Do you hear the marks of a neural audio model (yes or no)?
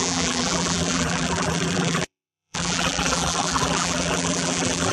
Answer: yes